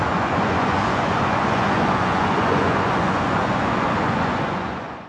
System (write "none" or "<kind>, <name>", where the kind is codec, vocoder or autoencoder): vocoder, Vocos